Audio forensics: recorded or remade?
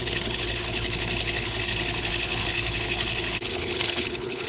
remade